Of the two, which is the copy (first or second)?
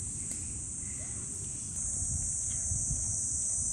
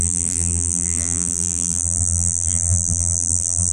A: second